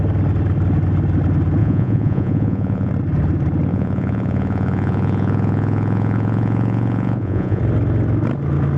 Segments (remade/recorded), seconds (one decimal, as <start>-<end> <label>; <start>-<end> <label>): 0.0-1.6 recorded; 1.6-2.9 remade; 2.9-3.7 recorded; 3.7-7.6 remade; 7.6-8.8 recorded